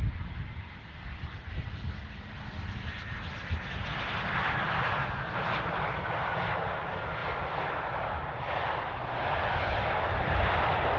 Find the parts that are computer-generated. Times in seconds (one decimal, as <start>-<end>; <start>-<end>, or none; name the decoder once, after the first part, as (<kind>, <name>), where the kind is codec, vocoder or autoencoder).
none